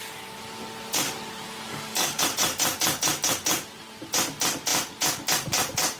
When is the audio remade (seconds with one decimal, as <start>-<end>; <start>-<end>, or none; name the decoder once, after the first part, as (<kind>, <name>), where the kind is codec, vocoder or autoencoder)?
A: 1.7-2.2 (codec, DAC)